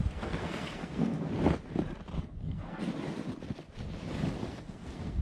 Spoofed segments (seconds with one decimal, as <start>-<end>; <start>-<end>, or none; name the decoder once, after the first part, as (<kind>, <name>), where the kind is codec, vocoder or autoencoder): 0.0-1.3 (codec, SNAC); 2.2-2.9; 4.5-5.2